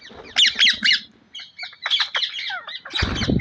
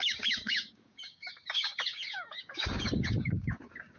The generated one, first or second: second